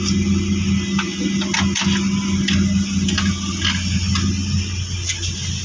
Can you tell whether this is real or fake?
real